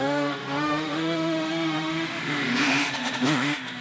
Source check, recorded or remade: remade